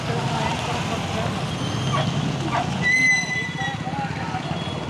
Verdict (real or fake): real